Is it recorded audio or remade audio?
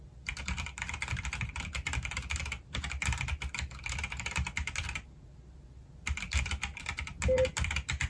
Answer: recorded